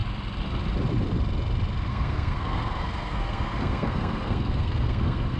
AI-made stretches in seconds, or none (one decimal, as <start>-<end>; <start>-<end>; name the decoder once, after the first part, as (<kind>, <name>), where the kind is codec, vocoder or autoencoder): 1.9-5.4 (codec, SNAC)